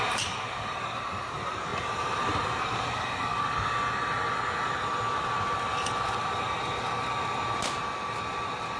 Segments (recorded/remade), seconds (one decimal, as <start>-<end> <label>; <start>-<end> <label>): 0.0-3.3 remade; 3.3-8.8 recorded